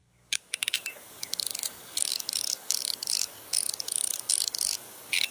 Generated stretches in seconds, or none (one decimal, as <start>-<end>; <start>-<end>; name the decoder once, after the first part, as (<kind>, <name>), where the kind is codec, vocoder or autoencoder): 0.0-5.3 (codec, DAC)